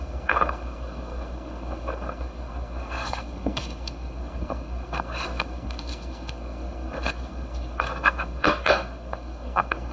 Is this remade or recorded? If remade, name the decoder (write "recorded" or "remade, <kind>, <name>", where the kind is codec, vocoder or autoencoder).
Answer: remade, codec, SNAC